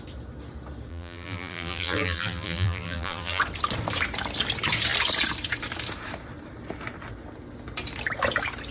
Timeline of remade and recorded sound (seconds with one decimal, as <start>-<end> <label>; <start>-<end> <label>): 0.0-0.9 recorded; 0.9-3.4 remade; 3.4-8.7 recorded